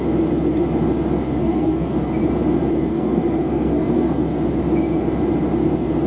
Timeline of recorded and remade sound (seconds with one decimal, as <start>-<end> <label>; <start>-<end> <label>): 0.0-1.4 recorded; 1.4-1.9 remade; 1.9-2.9 recorded; 2.9-4.1 remade; 4.1-6.1 recorded